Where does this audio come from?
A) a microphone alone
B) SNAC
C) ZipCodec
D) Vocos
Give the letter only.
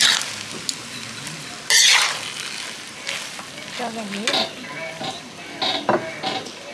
A